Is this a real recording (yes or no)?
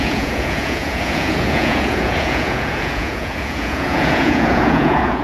no